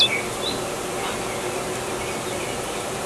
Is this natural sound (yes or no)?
yes